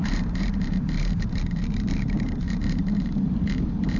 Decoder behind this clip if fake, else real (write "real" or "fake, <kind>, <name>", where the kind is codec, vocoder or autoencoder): fake, vocoder, BigVGAN v2